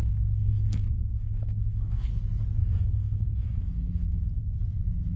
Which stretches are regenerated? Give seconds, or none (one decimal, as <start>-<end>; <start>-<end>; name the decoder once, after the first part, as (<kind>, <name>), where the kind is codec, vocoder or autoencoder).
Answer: 0.0-2.1 (codec, SNAC); 2.6-4.2